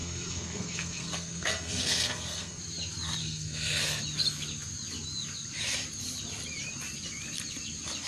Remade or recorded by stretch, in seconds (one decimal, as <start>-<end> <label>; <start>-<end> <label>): 0.0-2.6 remade; 2.6-3.2 recorded; 3.2-4.0 remade; 4.0-8.1 recorded